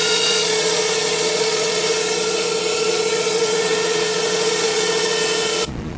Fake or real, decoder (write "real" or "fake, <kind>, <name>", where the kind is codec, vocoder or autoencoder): fake, vocoder, Vocos